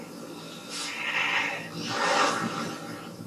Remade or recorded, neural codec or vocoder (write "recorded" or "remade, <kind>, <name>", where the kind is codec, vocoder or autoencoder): recorded